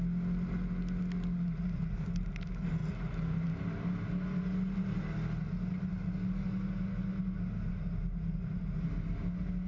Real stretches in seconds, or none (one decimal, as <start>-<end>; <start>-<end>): 0.0-9.7